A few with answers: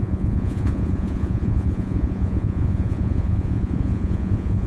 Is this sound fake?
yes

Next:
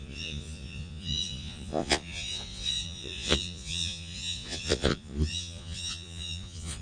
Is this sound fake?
yes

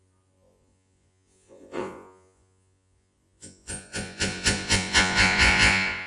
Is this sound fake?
yes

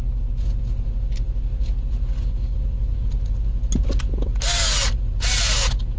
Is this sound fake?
no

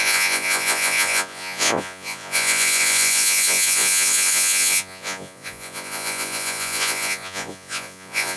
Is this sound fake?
yes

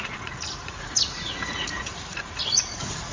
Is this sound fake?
yes